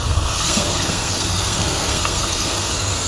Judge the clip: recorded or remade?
remade